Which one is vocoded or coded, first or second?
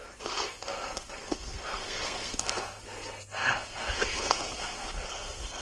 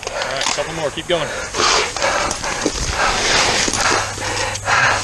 first